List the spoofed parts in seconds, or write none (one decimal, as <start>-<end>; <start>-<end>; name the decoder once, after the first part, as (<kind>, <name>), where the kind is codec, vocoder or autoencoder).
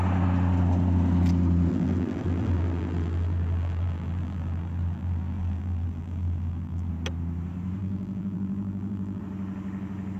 1.7-6.9 (vocoder, BigVGAN v2); 7.8-9.2